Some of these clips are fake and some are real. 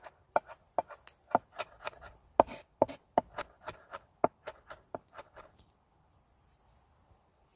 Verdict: real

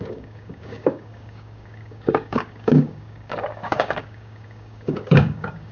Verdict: fake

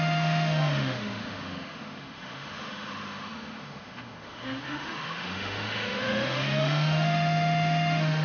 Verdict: fake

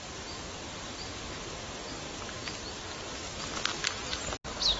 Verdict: real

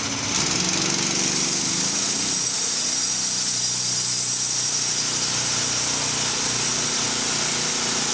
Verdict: real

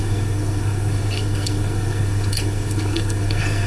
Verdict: fake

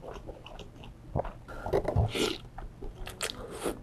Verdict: real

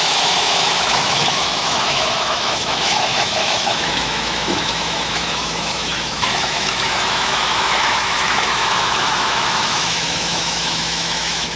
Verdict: fake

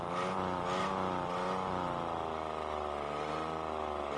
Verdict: real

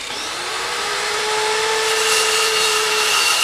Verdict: fake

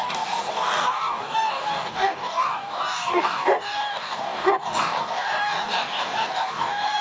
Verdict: fake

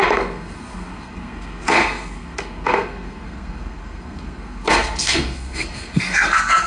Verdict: fake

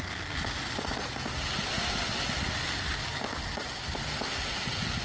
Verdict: real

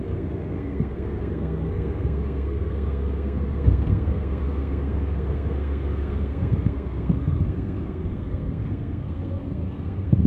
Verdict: fake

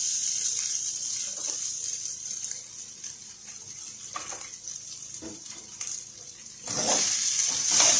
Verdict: fake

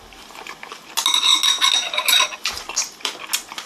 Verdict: real